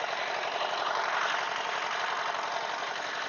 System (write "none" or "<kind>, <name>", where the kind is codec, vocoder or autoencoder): none